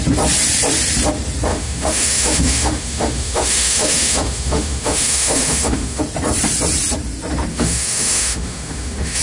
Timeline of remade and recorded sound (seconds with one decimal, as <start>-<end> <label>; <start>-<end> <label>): 0.0-1.5 recorded; 1.5-6.0 remade; 6.0-7.5 recorded; 7.5-9.2 remade